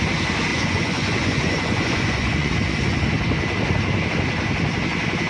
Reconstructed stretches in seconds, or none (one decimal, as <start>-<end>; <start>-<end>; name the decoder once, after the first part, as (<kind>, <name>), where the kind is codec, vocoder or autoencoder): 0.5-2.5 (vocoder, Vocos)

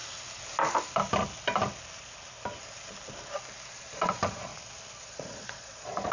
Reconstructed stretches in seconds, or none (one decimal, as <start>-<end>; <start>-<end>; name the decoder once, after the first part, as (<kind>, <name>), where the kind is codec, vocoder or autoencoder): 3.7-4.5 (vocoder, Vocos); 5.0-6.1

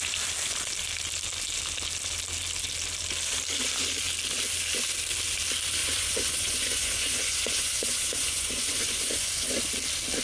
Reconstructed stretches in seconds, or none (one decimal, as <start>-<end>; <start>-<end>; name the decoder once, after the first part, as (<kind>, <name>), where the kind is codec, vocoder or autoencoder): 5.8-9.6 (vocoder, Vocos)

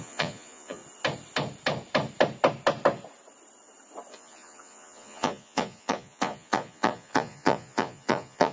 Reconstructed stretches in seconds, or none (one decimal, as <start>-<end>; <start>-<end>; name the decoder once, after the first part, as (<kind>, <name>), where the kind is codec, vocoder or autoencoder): 0.0-0.8 (vocoder, Vocos); 4.1-8.5

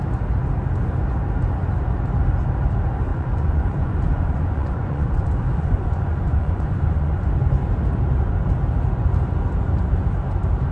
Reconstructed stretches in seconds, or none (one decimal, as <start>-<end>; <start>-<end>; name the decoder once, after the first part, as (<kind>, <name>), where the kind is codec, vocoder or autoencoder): 3.1-7.3 (vocoder, Vocos)

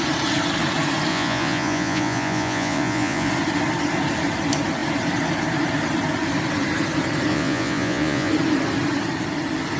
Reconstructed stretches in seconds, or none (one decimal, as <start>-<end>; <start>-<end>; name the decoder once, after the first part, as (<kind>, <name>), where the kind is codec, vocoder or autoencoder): 1.1-3.3 (vocoder, Vocos); 7.3-8.3

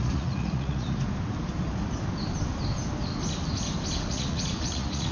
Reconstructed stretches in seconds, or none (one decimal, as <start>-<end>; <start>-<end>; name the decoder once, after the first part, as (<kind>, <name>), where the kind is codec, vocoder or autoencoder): 0.0-1.0 (vocoder, Vocos); 4.1-5.1

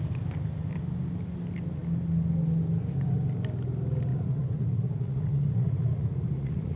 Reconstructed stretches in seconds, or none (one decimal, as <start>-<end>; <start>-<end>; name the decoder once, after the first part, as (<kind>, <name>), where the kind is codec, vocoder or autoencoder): 4.1-6.8 (vocoder, Vocos)